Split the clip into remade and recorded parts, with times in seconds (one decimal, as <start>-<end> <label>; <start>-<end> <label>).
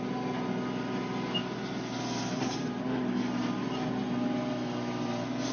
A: 0.0-5.5 recorded